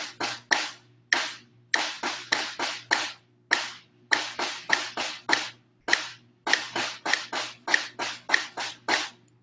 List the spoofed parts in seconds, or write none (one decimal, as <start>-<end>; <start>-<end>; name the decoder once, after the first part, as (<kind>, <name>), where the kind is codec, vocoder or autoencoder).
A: none